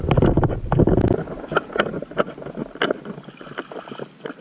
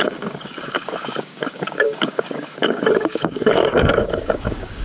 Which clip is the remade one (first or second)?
second